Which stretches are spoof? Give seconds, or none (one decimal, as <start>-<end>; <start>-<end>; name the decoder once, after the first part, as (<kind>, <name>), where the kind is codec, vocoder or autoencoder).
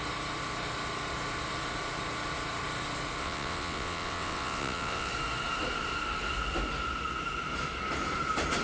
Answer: 3.2-5.1 (vocoder, WaveNeXt)